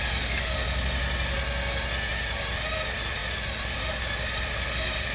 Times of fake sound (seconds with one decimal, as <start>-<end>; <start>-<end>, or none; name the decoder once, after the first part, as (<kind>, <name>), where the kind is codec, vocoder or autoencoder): none